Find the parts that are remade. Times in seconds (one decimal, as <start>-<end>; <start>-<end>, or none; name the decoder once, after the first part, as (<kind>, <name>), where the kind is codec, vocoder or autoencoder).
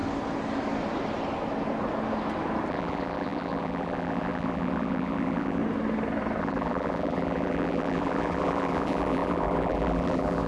2.7-5.6 (vocoder, BigVGAN v2); 6.4-10.5